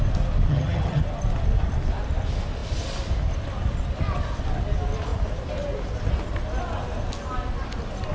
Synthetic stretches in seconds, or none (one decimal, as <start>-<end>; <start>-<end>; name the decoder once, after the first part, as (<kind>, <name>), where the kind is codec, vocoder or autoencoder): 0.5-1.0 (vocoder, HiFi-GAN)